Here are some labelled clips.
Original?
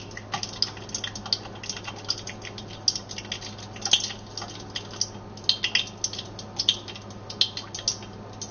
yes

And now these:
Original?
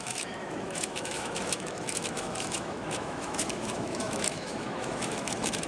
no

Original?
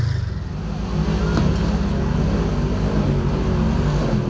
yes